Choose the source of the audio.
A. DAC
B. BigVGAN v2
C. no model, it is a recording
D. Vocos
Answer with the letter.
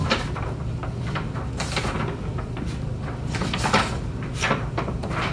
C